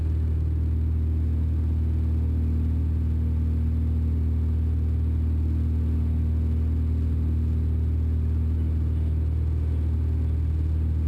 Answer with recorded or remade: recorded